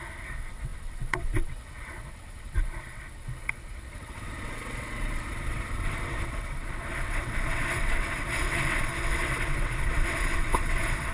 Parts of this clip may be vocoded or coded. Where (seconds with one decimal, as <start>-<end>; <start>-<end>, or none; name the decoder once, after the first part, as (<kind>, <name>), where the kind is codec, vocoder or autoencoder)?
0.0-11.1 (vocoder, WaveNeXt)